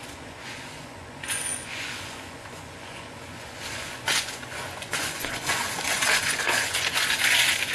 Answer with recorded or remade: remade